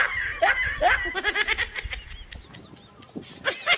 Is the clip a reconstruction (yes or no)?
no